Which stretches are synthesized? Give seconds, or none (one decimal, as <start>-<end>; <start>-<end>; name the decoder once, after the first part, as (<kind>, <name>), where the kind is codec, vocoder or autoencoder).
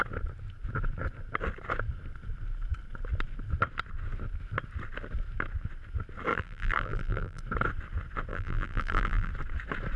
6.3-7.4 (vocoder, BigVGAN v2); 8.3-9.3